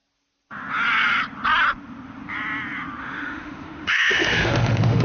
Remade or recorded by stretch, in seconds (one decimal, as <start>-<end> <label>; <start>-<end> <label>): 0.0-3.0 recorded; 3.0-5.0 remade